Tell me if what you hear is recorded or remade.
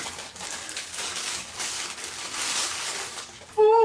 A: remade